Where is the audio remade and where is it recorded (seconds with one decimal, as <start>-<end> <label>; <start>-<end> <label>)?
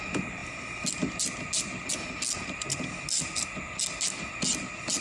0.0-5.0 recorded